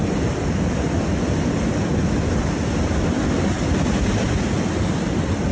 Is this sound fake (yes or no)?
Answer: no